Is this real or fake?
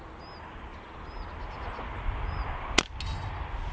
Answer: real